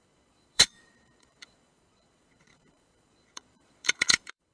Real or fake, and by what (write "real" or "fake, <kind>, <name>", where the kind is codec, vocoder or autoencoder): fake, vocoder, Vocos